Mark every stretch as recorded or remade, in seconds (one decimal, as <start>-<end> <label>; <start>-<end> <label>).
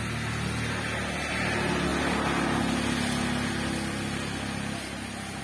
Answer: 0.0-5.4 recorded